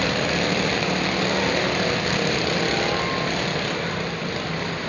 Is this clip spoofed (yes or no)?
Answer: no